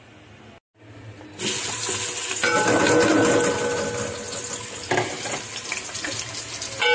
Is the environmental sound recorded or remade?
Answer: recorded